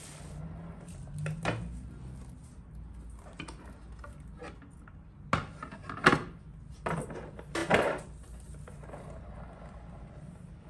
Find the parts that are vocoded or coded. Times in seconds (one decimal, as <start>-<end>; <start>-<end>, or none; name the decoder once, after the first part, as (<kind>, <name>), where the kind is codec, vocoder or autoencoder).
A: none